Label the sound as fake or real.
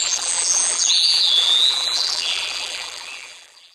fake